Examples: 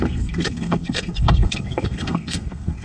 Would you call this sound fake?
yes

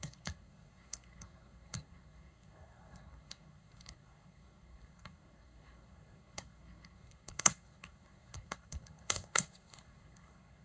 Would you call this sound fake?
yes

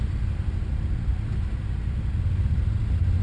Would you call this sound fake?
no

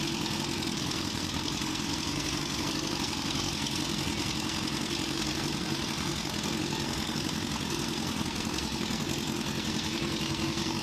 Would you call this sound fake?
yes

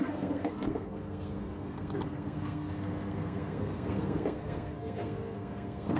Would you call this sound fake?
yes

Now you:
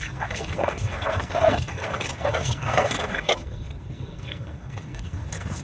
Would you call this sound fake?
yes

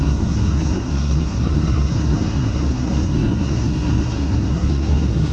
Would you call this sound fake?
yes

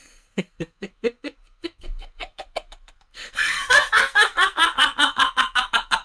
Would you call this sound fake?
yes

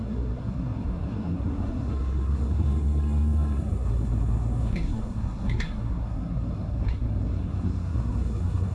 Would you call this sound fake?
yes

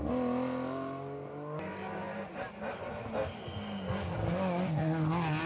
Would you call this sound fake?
no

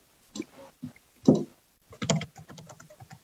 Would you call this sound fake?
no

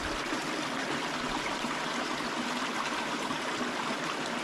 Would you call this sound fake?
no